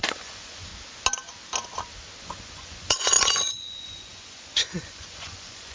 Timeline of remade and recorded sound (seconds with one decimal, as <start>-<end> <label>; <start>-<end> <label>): 0.0-0.7 remade; 0.7-2.2 recorded; 2.2-5.7 remade